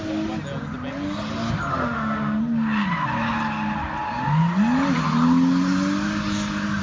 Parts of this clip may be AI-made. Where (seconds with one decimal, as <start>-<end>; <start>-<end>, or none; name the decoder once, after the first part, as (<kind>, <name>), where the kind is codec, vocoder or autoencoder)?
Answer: 1.7-2.4 (autoencoder, DAC-VAE)